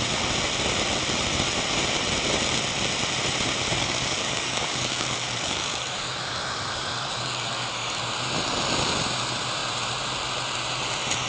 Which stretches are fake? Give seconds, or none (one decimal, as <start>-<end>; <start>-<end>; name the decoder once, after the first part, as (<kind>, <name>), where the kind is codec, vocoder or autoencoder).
3.8-8.0 (codec, DAC)